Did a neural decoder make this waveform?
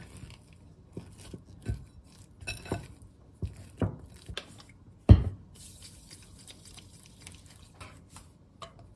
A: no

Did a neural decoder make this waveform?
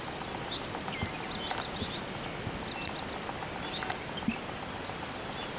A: no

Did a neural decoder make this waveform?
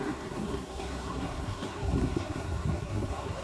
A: yes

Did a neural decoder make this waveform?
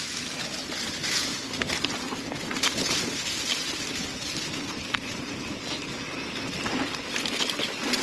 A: yes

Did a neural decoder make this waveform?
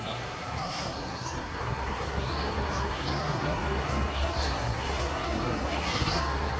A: yes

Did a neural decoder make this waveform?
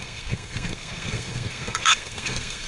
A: yes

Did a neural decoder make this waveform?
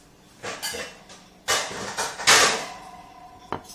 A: no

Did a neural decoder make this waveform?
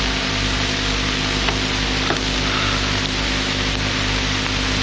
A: yes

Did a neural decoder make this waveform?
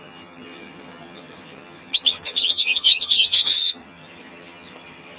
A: yes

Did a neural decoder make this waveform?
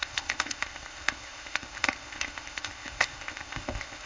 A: yes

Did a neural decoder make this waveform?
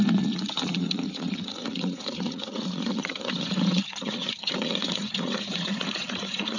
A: yes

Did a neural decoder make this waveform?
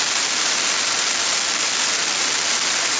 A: no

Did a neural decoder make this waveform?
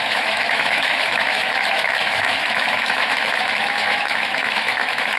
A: yes